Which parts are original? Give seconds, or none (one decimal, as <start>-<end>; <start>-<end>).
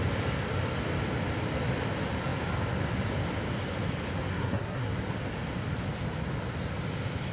0.0-4.3; 4.9-7.3